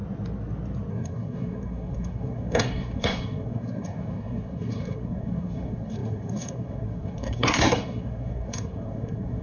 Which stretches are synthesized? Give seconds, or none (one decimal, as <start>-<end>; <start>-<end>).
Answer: 0.9-9.4